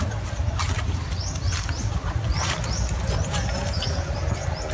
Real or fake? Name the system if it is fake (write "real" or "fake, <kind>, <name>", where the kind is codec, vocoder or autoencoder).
real